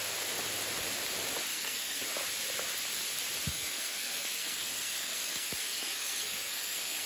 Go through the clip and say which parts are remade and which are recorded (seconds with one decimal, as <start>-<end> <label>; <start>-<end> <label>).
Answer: 0.0-1.5 recorded; 1.5-2.0 remade; 2.0-3.5 recorded; 3.5-7.1 remade